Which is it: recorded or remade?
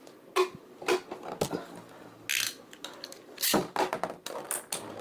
recorded